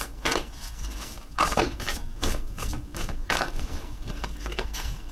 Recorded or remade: remade